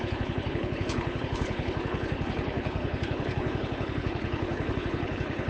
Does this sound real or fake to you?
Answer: fake